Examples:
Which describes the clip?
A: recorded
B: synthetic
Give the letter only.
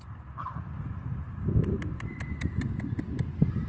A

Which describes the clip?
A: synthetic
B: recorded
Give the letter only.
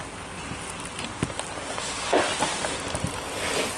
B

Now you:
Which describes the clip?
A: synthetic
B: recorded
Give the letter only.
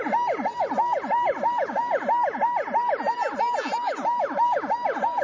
B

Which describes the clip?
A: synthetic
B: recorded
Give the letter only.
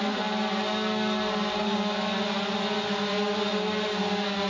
B